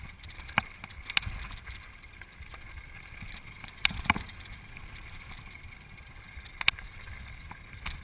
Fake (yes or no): no